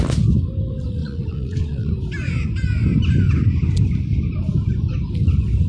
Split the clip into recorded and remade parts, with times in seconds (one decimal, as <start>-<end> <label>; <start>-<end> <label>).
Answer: 0.0-1.0 recorded; 1.0-1.9 remade; 1.9-5.7 recorded